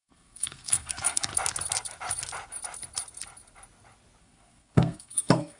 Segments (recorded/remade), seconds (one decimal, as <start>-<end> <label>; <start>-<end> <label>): 0.0-1.3 remade; 1.3-4.2 recorded; 4.2-5.6 remade